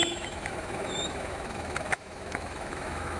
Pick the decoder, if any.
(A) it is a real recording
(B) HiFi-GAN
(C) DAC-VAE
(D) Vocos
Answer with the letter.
C